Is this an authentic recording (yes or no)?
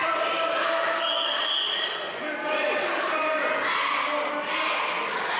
yes